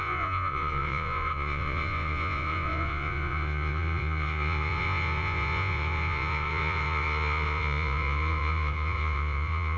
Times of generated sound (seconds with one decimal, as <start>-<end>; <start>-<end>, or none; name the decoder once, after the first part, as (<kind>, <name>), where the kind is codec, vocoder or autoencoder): 0.0-9.8 (vocoder, Vocos)